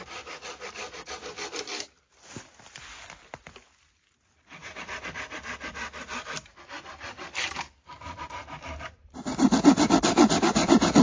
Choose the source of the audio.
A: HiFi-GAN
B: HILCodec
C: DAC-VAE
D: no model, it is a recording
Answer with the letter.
D